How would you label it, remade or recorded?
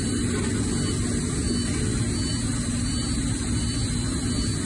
recorded